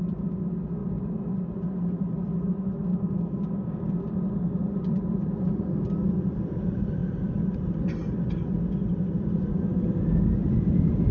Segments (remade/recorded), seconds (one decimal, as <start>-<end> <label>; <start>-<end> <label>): 0.0-2.9 recorded; 2.9-3.8 remade; 3.8-11.1 recorded